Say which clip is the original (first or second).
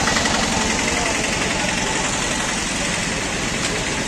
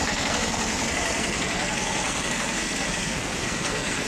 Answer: first